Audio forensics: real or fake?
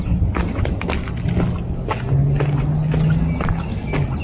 real